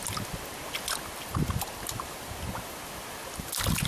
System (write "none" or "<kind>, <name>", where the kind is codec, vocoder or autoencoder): none